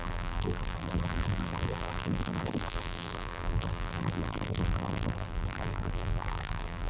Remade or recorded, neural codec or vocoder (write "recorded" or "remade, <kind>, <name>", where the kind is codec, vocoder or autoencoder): remade, vocoder, BigVGAN v2